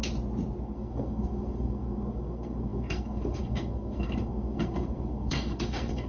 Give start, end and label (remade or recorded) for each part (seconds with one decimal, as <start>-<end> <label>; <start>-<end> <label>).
0.0-0.6 recorded; 0.6-6.1 remade